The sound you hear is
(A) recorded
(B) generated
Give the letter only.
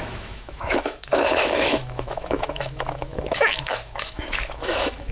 B